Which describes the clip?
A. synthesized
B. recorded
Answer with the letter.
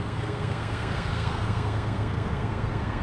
A